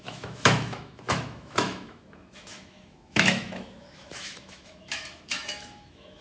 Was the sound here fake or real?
fake